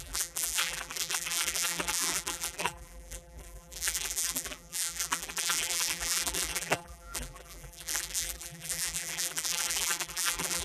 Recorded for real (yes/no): no